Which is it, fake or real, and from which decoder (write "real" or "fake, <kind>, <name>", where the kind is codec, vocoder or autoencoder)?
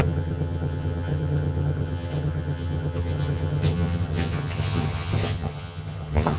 fake, vocoder, HiFi-GAN